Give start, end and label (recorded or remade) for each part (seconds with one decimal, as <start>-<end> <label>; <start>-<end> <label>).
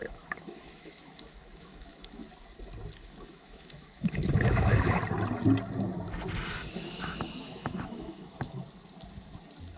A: 0.0-2.2 remade; 2.2-3.0 recorded; 3.0-5.0 remade; 5.0-6.7 recorded; 6.7-8.6 remade; 8.6-9.8 recorded